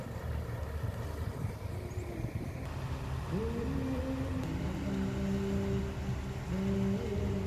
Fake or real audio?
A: real